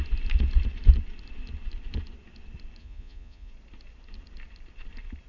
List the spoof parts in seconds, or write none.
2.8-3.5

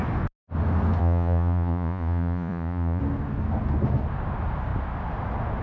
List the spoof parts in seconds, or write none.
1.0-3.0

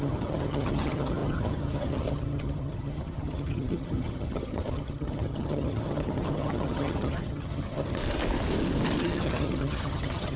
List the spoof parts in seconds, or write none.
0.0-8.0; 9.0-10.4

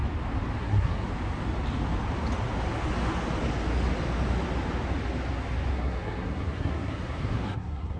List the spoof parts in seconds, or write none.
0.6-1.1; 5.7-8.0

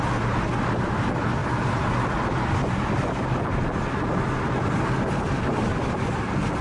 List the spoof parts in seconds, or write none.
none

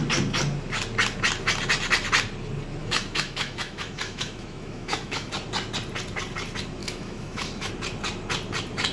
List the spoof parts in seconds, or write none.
2.8-5.3; 6.8-7.7

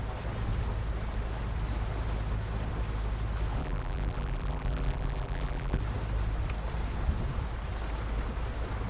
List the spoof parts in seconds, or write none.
3.6-5.8

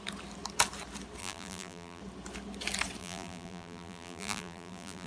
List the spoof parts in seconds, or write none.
1.2-2.0; 3.0-5.1